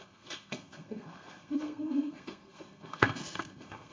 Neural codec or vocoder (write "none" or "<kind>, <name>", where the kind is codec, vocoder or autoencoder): codec, SNAC